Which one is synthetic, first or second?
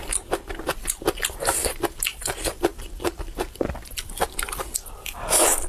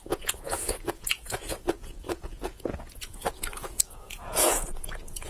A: second